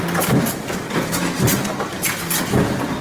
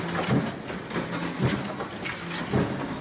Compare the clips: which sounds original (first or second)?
second